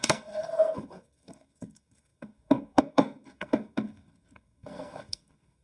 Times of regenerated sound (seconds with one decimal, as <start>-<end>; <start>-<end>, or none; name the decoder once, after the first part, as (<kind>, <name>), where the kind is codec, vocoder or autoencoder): 0.0-5.6 (codec, SNAC)